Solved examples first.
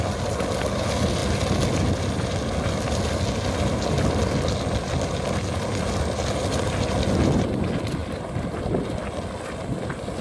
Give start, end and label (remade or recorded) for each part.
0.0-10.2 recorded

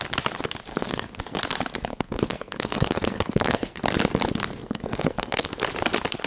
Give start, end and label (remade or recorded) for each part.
0.0-0.7 recorded; 0.7-1.4 remade; 1.4-1.9 recorded; 1.9-3.8 remade; 3.8-4.6 recorded; 4.6-5.5 remade; 5.5-6.3 recorded

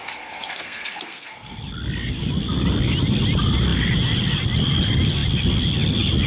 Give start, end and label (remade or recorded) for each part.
0.0-1.5 remade; 1.5-6.3 recorded

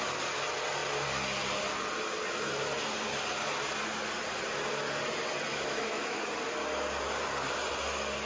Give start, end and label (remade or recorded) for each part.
0.0-5.5 recorded; 5.5-6.2 remade; 6.2-8.2 recorded